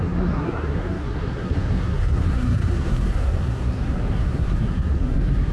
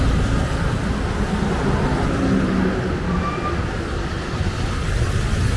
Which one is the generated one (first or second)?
first